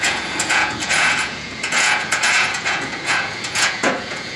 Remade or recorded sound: remade